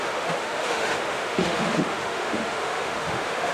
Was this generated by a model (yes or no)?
yes